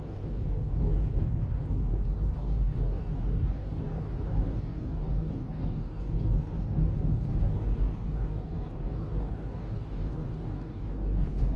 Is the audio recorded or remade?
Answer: remade